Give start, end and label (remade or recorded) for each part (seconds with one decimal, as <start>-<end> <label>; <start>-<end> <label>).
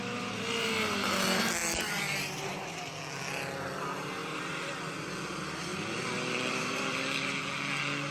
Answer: 0.0-1.6 recorded; 1.6-2.5 remade; 2.5-4.2 recorded; 4.2-4.7 remade; 4.7-5.7 recorded; 5.7-7.4 remade; 7.4-8.1 recorded